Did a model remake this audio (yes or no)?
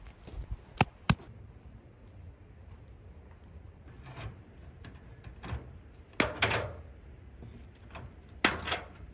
no